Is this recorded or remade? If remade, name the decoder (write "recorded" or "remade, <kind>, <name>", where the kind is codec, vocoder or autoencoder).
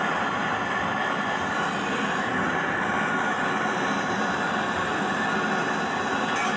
recorded